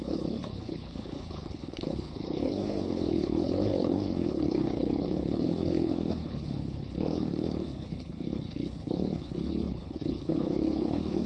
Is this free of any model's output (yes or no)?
no